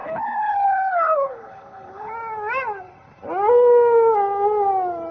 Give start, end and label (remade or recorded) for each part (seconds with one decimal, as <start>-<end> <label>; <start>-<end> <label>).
0.0-2.1 remade; 2.1-5.1 recorded

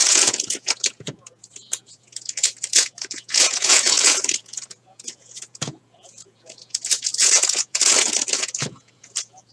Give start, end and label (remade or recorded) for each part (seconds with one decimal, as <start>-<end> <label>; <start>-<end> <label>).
0.0-9.5 remade

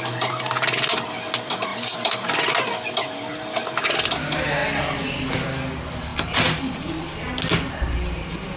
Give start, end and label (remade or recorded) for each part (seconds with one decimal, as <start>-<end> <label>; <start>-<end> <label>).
0.0-1.7 recorded; 1.7-2.3 remade; 2.3-6.1 recorded; 6.1-6.9 remade; 6.9-8.6 recorded

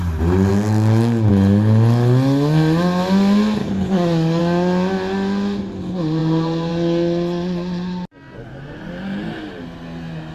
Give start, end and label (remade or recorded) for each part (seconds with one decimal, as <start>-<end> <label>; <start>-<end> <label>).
0.0-0.5 recorded; 0.5-1.3 remade; 1.3-3.6 recorded; 3.6-4.4 remade; 4.4-10.3 recorded

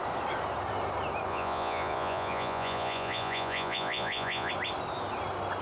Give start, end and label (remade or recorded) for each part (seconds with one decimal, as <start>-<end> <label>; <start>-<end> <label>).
0.0-1.3 recorded; 1.3-4.5 remade; 4.5-5.6 recorded

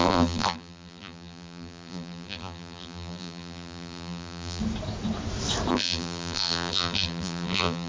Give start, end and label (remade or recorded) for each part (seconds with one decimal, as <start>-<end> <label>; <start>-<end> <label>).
0.0-4.6 remade; 4.6-5.7 recorded; 5.7-7.9 remade

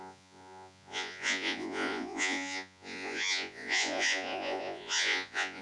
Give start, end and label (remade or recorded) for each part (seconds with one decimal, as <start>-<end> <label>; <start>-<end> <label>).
0.0-5.6 remade

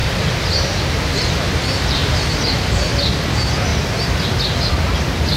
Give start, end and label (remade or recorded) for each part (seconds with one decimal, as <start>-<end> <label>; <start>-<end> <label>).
0.0-0.9 recorded; 0.9-2.0 remade; 2.0-3.2 recorded; 3.2-3.7 remade; 3.7-4.7 recorded; 4.7-5.4 remade